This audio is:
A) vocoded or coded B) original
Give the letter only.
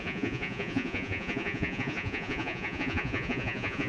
A